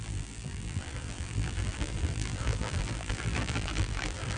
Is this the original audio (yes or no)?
no